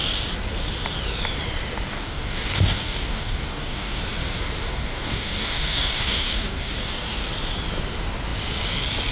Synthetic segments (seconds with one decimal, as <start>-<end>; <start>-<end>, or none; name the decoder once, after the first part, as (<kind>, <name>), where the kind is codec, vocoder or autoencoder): 1.9-4.0 (codec, DAC); 4.6-7.3